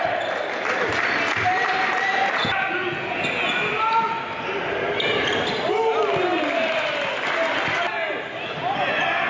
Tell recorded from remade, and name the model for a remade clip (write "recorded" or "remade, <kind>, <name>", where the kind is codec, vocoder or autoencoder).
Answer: recorded